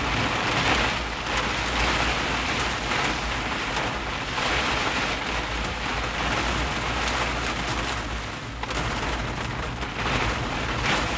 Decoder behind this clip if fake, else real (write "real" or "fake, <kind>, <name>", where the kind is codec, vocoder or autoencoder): real